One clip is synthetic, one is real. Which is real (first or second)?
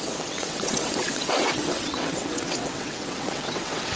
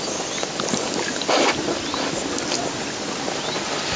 second